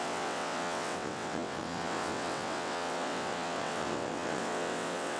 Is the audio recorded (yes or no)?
no